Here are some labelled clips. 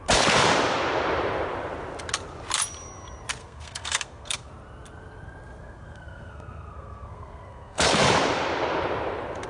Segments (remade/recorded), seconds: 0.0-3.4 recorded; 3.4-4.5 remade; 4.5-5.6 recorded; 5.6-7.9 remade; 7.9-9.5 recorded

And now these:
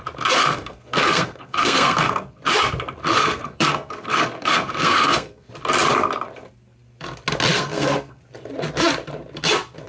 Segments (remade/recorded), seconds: 0.0-0.4 recorded; 0.4-2.3 remade; 2.3-3.2 recorded; 3.2-5.5 remade; 5.5-7.5 recorded; 7.5-8.2 remade; 8.2-9.9 recorded